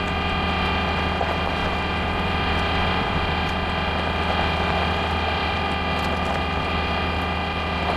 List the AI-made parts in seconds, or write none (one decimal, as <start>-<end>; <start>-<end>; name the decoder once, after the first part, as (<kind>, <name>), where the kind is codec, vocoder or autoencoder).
1.6-3.2 (vocoder, BigVGAN v2)